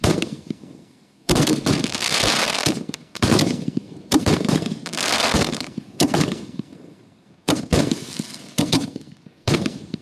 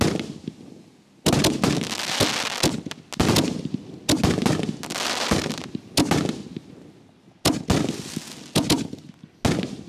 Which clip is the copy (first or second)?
first